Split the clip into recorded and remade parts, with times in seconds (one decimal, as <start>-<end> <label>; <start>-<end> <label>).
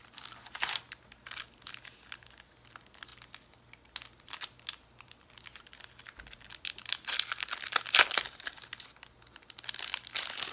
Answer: 0.0-10.5 recorded